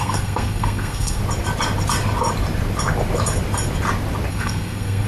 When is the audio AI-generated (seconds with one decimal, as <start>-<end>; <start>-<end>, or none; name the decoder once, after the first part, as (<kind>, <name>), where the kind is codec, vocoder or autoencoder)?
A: 0.0-1.2 (codec, SNAC); 4.3-5.1